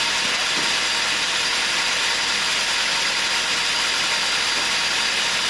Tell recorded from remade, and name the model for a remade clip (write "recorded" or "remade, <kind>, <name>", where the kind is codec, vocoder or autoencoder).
recorded